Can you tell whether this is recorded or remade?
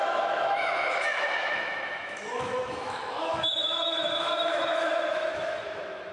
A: remade